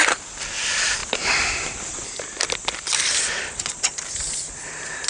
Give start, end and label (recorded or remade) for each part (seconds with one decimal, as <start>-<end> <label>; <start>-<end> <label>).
0.0-5.1 recorded